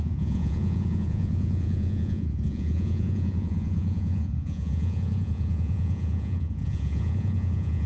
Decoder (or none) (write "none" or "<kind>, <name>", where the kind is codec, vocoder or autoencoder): vocoder, Vocos